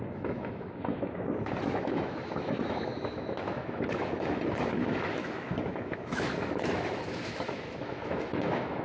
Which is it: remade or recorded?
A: remade